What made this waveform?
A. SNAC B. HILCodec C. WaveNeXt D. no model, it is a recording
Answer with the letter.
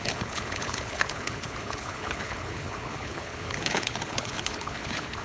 B